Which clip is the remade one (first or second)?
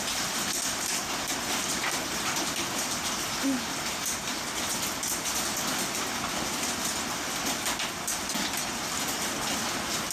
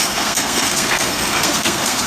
second